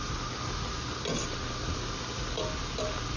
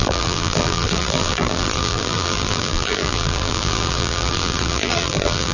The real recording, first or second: first